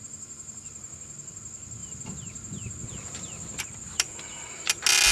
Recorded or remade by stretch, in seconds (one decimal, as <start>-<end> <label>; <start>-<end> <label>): 0.0-5.1 recorded